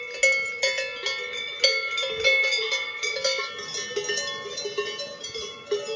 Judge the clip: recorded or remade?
recorded